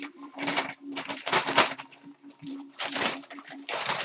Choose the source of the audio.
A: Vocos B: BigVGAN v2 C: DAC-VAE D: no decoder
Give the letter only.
B